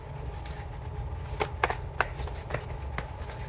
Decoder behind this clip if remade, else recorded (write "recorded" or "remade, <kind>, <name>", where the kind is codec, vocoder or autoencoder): recorded